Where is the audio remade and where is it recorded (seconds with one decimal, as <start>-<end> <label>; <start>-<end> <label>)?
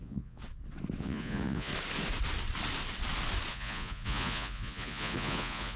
0.0-0.4 remade; 0.4-1.0 recorded; 1.0-1.7 remade; 1.7-3.5 recorded; 3.5-5.8 remade